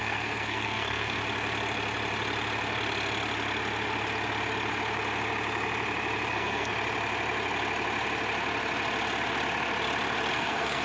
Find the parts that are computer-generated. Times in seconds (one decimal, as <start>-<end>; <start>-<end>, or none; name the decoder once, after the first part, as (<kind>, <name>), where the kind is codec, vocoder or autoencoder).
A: 0.0-1.2 (codec, SNAC); 6.3-6.7; 10.3-10.8